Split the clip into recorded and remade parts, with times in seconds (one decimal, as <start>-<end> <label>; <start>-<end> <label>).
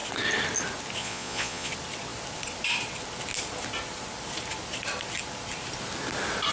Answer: 0.0-1.0 recorded; 1.0-1.7 remade; 1.7-6.5 recorded